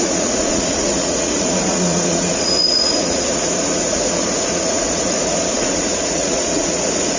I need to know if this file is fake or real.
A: fake